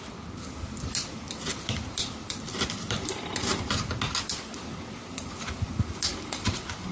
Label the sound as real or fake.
real